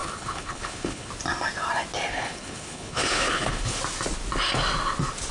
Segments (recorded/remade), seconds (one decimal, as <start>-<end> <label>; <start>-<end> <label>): 0.0-1.1 remade; 1.1-2.1 recorded; 2.1-3.8 remade; 3.8-5.3 recorded